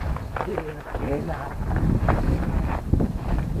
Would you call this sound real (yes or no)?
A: yes